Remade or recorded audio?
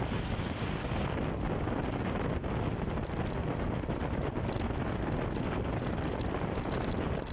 recorded